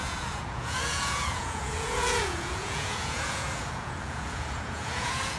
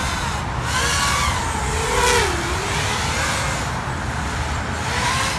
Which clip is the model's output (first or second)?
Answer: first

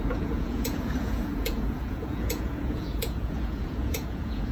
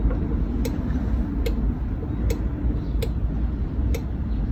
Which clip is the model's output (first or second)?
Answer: first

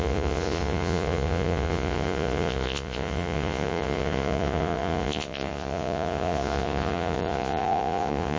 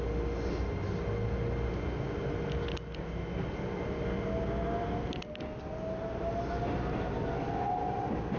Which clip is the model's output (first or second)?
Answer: first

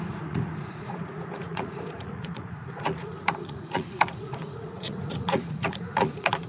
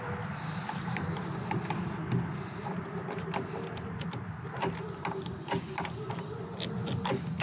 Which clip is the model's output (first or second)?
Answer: first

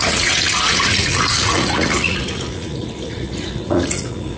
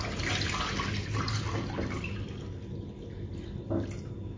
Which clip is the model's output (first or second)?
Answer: first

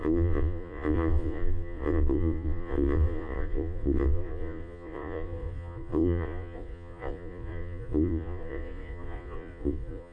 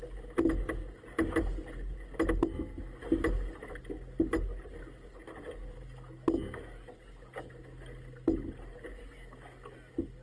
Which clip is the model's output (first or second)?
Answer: first